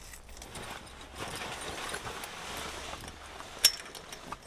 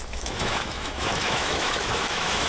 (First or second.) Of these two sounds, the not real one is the second